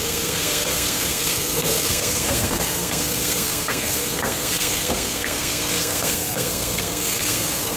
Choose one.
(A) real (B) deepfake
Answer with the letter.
B